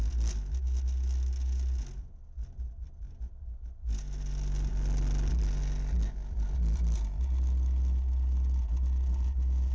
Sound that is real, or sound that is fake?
real